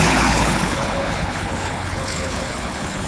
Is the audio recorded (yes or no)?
no